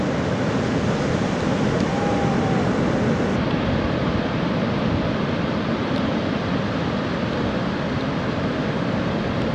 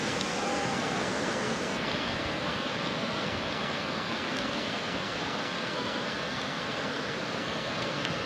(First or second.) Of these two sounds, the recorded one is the first